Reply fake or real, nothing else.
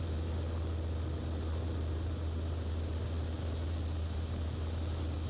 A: real